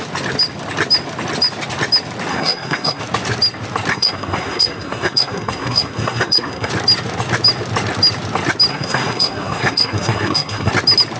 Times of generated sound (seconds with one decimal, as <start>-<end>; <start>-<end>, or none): 2.3-3.0; 3.9-6.7; 8.7-10.7